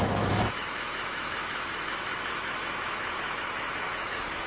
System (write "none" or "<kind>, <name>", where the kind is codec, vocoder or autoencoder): autoencoder, DAC-VAE